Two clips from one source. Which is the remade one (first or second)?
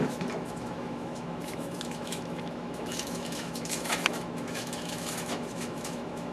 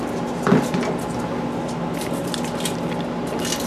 first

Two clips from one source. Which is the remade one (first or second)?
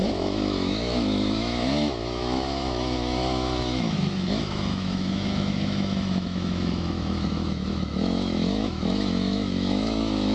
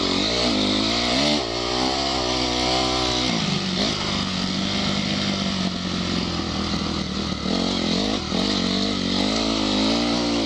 first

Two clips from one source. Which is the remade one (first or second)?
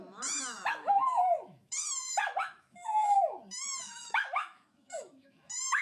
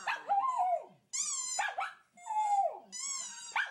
first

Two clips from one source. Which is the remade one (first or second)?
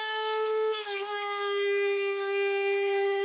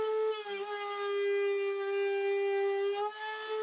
first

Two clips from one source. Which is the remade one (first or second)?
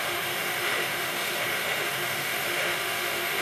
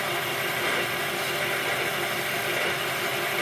first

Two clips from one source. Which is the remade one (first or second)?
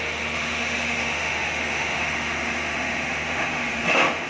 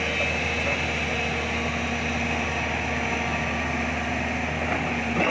first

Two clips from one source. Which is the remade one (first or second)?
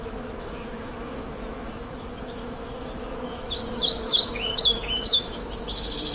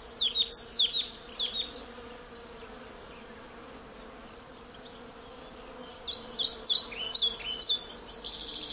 first